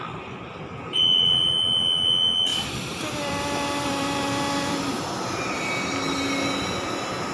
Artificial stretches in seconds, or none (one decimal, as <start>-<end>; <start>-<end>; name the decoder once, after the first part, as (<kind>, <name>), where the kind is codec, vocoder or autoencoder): 0.8-1.5 (vocoder, BigVGAN v2); 2.5-4.7